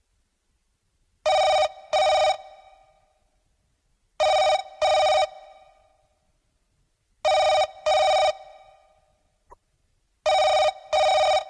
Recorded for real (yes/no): yes